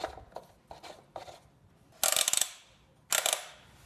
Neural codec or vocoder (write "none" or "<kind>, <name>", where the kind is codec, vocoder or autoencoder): none